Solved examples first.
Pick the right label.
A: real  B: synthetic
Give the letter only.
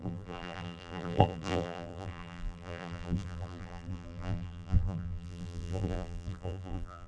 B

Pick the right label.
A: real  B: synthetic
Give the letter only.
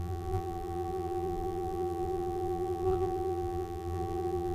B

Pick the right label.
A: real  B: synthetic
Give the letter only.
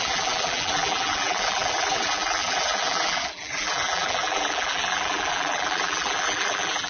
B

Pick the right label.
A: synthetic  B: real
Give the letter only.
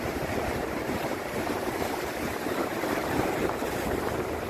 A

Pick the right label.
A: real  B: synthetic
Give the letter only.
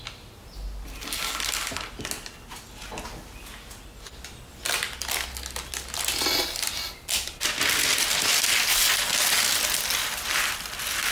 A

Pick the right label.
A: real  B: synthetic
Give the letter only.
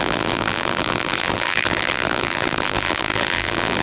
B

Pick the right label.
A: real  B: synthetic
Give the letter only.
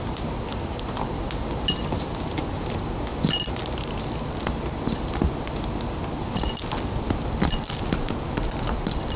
A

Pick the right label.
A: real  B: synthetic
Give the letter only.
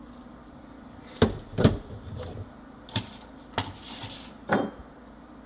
A